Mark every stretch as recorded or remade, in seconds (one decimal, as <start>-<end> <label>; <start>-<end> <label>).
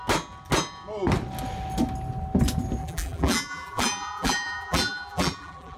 0.0-2.8 recorded; 2.8-5.8 remade